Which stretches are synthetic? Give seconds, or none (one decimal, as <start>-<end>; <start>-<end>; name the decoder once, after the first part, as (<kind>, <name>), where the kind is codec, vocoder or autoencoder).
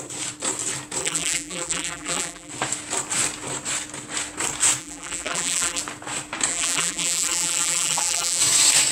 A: 1.0-2.5 (vocoder, BigVGAN v2); 4.8-5.8; 6.5-8.4